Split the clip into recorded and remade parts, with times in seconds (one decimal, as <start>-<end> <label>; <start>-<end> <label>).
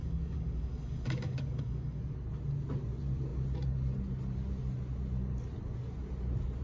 0.0-2.0 remade; 2.0-6.6 recorded